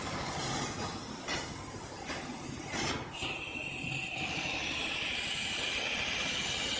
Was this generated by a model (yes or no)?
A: no